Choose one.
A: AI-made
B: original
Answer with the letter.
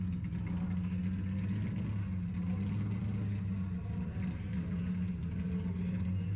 B